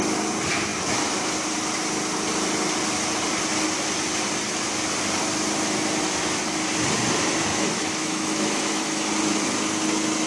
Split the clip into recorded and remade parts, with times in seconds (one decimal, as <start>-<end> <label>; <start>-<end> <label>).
0.0-7.5 recorded; 7.5-9.1 remade; 9.1-10.3 recorded